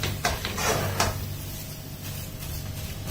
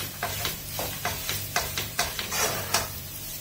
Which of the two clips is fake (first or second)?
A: second